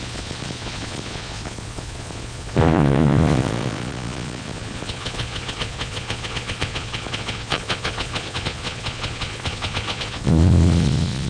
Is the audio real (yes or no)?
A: no